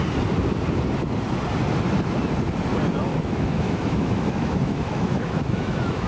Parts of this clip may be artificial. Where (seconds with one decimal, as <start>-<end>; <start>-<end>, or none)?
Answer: 3.1-6.1